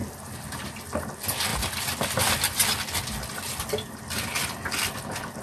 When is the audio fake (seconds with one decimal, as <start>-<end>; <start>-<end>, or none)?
none